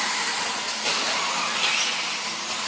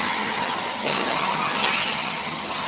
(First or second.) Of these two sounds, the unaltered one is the first